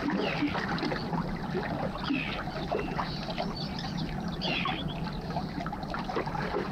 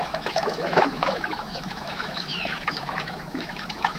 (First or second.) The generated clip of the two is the second